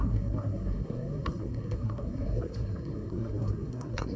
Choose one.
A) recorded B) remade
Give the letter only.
B